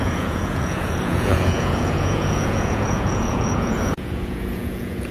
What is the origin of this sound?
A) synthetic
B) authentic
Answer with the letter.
A